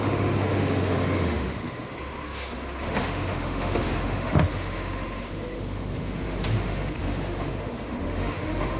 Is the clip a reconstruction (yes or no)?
yes